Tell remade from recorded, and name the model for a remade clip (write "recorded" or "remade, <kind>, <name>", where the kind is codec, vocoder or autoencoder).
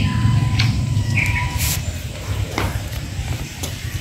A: remade, vocoder, BigVGAN v2